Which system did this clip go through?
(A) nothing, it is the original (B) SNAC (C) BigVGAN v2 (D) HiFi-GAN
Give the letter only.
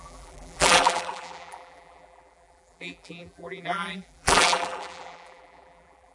C